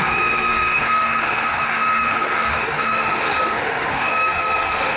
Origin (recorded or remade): remade